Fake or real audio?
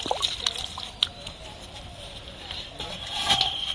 real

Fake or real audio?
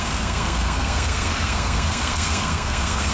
fake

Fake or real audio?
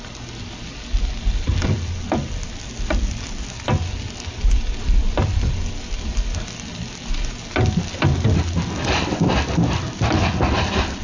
real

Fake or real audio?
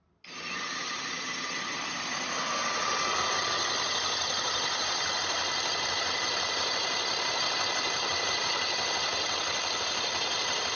real